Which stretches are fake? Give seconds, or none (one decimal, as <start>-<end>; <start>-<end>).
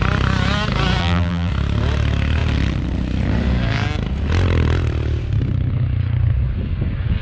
1.0-1.5